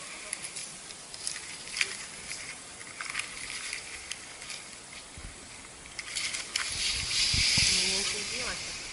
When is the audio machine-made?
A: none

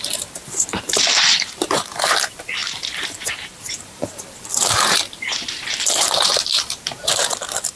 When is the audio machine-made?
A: 0.0-7.8 (vocoder, BigVGAN v2)

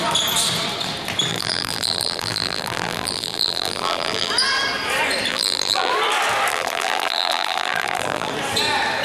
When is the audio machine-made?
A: 1.3-4.3 (vocoder, BigVGAN v2); 5.3-5.9; 6.5-8.3

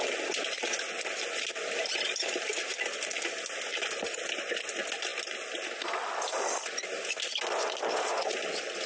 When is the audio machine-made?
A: 3.7-4.4 (vocoder, BigVGAN v2)

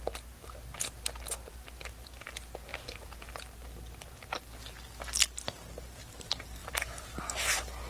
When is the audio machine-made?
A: 2.7-3.3 (vocoder, BigVGAN v2); 6.6-7.9